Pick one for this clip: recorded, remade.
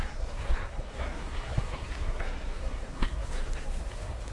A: remade